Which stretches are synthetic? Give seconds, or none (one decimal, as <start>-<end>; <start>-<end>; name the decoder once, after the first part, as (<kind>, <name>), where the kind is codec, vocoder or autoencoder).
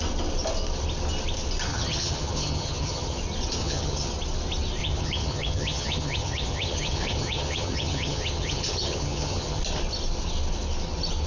1.7-3.2 (vocoder, HiFi-GAN); 3.6-4.1; 4.8-9.6